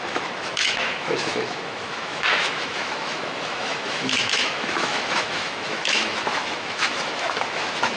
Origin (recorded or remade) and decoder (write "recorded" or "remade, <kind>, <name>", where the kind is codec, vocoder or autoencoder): remade, autoencoder, DAC-VAE